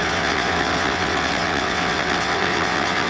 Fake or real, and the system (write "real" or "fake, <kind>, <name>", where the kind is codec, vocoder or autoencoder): fake, vocoder, WaveNeXt